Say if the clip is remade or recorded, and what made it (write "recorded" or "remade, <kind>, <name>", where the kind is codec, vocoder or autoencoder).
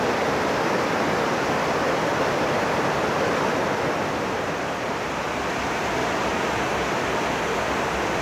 remade, vocoder, BigVGAN v2